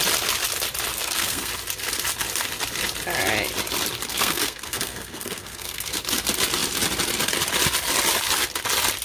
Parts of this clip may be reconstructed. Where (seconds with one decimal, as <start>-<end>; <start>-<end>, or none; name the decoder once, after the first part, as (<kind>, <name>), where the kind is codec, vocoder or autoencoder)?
0.9-1.5 (codec, SNAC); 4.1-6.0